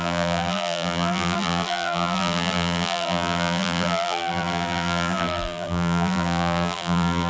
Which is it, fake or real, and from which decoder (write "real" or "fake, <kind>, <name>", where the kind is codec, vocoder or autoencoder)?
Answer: fake, vocoder, BigVGAN v2